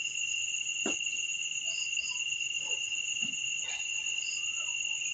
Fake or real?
real